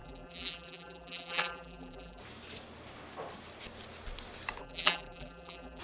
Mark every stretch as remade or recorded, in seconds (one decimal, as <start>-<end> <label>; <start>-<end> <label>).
0.0-2.2 remade; 2.2-4.6 recorded; 4.6-5.8 remade